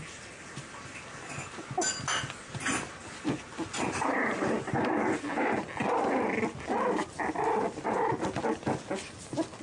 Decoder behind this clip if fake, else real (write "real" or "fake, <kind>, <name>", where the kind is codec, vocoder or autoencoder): real